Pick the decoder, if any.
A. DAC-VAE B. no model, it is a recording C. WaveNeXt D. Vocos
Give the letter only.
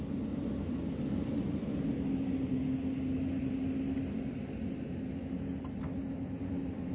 B